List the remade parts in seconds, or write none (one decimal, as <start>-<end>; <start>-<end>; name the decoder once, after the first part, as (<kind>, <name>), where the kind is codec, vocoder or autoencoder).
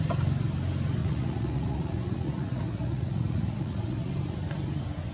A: 1.0-4.1 (vocoder, Vocos)